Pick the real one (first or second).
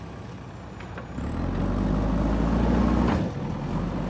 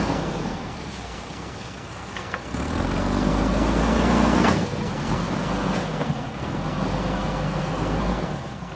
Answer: first